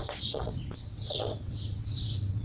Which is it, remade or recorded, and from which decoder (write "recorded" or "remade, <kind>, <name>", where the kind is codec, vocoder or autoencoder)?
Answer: remade, vocoder, WaveNeXt